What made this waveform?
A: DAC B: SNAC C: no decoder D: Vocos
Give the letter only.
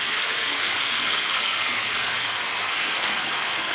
B